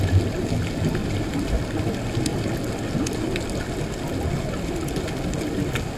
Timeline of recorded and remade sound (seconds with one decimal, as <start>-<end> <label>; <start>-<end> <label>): 0.0-6.0 recorded

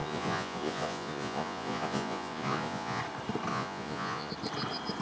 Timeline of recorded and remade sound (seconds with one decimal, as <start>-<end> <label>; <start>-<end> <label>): 0.0-3.0 remade; 3.0-3.5 recorded; 3.5-4.3 remade; 4.3-5.0 recorded